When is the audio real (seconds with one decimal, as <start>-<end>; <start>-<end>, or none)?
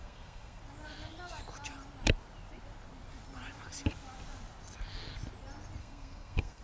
0.6-5.8